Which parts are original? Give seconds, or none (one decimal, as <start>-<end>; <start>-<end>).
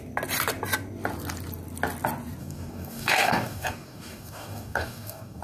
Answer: 0.0-2.4